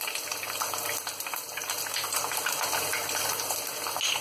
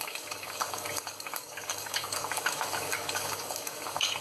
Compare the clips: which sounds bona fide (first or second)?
first